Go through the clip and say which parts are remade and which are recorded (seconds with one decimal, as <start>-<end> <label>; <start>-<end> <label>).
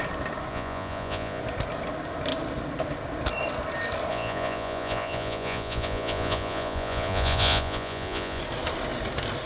0.0-0.5 recorded; 0.5-1.4 remade; 1.4-4.1 recorded; 4.1-8.4 remade; 8.4-9.5 recorded